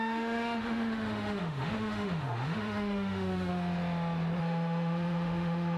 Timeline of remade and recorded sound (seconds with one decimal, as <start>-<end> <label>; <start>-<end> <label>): 0.0-3.5 remade; 3.5-4.4 recorded; 4.4-5.8 remade